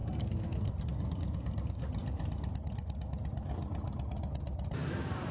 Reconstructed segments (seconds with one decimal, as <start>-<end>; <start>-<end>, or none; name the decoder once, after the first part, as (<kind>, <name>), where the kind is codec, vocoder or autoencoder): 0.0-0.8 (codec, SNAC)